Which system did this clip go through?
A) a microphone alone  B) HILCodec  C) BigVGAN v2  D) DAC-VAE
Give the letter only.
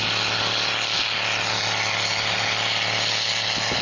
A